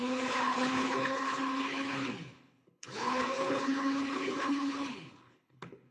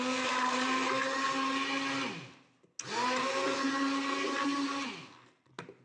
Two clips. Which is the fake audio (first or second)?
first